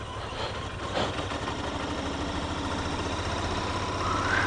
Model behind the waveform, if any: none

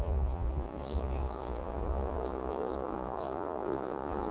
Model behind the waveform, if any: vocoder, Vocos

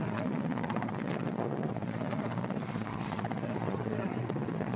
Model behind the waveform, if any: vocoder, Vocos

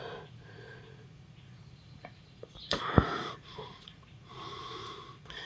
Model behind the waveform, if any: vocoder, Vocos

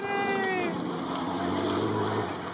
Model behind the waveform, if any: none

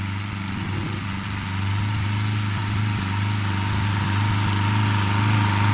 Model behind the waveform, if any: none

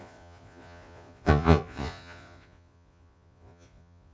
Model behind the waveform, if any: vocoder, Vocos